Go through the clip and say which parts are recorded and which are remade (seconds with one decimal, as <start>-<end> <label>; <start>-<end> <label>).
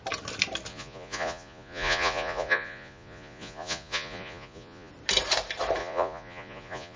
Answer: 0.0-0.7 recorded; 0.7-4.9 remade; 4.9-5.8 recorded; 5.8-7.0 remade